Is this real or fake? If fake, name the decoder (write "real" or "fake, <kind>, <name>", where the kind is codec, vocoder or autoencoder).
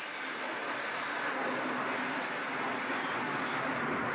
real